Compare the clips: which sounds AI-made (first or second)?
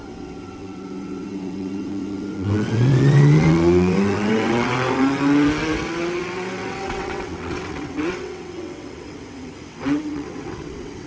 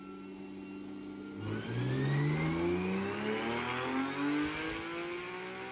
first